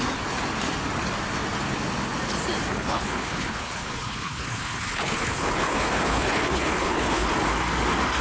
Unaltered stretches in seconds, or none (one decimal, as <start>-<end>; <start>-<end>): 0.0-2.7; 7.3-8.2

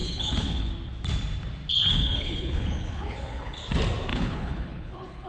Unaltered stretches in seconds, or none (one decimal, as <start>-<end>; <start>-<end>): 0.7-1.7; 3.6-4.1

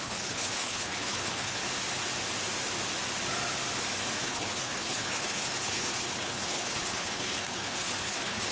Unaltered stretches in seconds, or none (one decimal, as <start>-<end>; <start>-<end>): 1.6-4.2

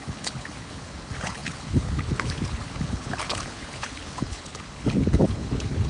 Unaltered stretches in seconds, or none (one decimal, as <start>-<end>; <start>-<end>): none

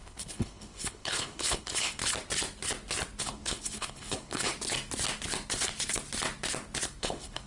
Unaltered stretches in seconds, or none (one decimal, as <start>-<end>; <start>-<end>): 2.0-3.2; 4.5-7.0

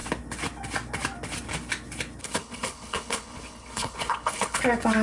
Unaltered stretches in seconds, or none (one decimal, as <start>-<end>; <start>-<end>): 0.0-2.2; 4.6-5.0

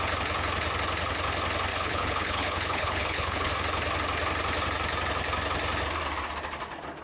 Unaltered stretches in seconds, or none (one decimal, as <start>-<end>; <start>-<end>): 0.0-1.7; 3.5-7.0